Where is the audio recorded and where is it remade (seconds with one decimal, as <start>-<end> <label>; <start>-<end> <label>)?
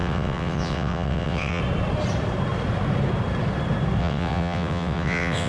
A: 0.0-1.6 remade; 1.6-4.0 recorded; 4.0-5.5 remade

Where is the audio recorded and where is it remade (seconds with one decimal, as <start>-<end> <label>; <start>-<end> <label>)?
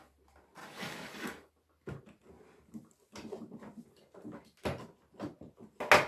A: 0.0-0.6 recorded; 0.6-1.5 remade; 1.5-6.1 recorded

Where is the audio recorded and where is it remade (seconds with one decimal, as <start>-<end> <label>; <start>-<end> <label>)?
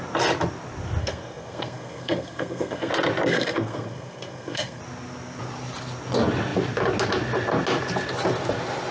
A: 0.0-1.0 recorded; 1.0-2.9 remade; 2.9-3.3 recorded; 3.3-4.8 remade; 4.8-8.9 recorded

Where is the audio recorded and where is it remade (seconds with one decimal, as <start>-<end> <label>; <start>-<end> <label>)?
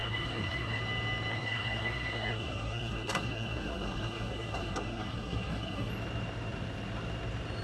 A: 0.0-0.8 remade; 0.8-1.3 recorded; 1.3-5.9 remade; 5.9-7.6 recorded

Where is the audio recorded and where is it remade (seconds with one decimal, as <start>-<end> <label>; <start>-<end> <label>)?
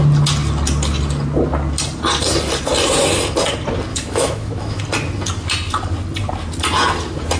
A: 0.0-3.9 recorded; 3.9-4.8 remade; 4.8-7.4 recorded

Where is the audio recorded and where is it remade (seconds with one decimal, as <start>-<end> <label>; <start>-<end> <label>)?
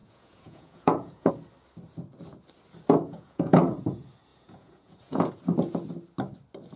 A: 0.0-1.3 remade; 1.3-3.0 recorded; 3.0-3.6 remade; 3.6-4.3 recorded; 4.3-5.3 remade; 5.3-6.8 recorded